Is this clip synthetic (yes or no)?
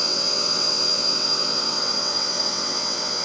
yes